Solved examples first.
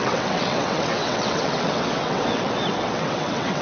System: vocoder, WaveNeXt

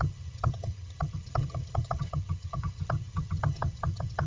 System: vocoder, HiFi-GAN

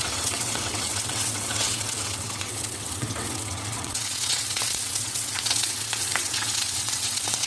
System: vocoder, WaveNeXt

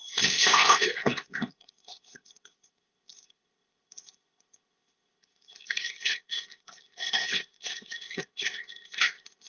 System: codec, ZipCodec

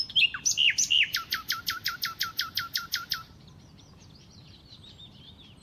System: vocoder, BigVGAN v2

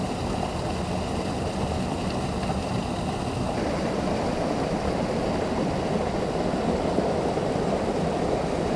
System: none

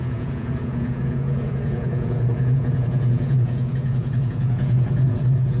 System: vocoder, Vocos